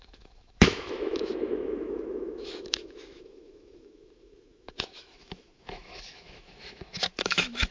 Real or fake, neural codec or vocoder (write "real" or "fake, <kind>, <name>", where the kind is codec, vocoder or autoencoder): fake, autoencoder, DAC-VAE